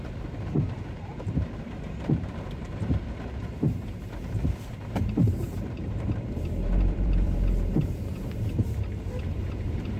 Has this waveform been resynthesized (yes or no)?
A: yes